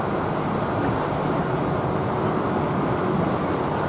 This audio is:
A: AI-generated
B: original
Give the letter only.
B